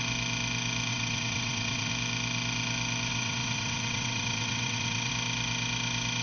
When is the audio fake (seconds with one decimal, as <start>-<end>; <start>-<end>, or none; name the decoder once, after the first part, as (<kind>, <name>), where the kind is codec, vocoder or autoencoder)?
0.9-1.9 (vocoder, WaveNeXt); 3.1-5.1